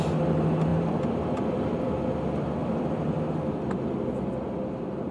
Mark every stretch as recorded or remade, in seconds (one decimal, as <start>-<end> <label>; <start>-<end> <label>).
0.0-0.7 recorded; 0.7-1.9 remade; 1.9-2.6 recorded; 2.6-3.2 remade; 3.2-5.1 recorded